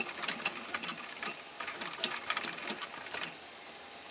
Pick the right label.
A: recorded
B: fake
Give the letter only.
A